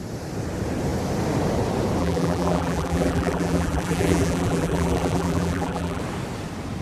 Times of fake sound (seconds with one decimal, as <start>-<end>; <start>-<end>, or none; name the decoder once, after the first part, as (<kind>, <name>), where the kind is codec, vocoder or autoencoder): 2.0-6.0 (vocoder, BigVGAN v2)